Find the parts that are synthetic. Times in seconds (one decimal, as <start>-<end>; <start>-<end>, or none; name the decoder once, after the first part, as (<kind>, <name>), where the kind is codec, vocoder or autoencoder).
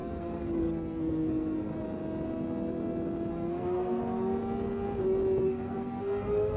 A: 0.0-1.7 (codec, SNAC); 3.3-4.0; 5.4-6.6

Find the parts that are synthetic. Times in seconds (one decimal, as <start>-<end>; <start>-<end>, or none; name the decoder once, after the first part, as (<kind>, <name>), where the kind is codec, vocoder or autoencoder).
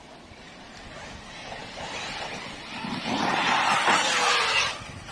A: none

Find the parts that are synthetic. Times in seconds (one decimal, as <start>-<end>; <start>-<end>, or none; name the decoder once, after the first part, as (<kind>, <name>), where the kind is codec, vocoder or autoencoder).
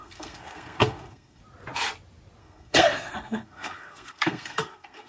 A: 0.0-1.4 (codec, SNAC); 2.4-5.1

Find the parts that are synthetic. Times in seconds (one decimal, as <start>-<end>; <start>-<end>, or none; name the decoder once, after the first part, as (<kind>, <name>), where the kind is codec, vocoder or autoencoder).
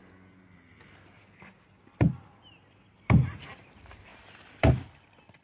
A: none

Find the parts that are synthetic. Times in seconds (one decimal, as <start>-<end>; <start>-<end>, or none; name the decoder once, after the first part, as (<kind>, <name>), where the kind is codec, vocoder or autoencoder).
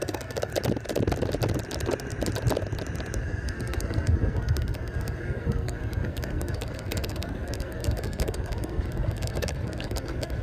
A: 0.0-0.5 (codec, SNAC); 3.2-10.4